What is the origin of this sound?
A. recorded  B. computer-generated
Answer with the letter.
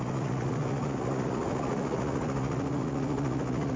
B